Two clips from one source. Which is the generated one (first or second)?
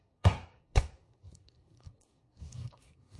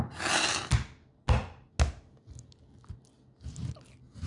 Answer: first